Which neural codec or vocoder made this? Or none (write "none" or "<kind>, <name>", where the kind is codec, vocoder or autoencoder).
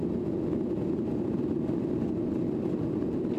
none